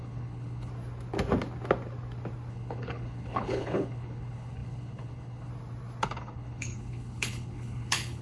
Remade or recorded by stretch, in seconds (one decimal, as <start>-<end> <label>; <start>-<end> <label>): 0.0-0.7 remade; 0.7-2.5 recorded; 2.5-5.5 remade; 5.5-6.0 recorded; 6.0-8.2 remade